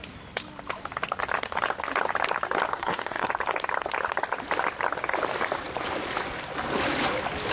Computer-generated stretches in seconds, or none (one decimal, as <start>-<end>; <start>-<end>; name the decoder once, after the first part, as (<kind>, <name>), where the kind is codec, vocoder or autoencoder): 2.7-3.3 (codec, SNAC)